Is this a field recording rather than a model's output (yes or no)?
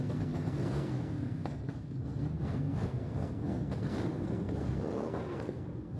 no